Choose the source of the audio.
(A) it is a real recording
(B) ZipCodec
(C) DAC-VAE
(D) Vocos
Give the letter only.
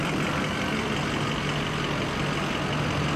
A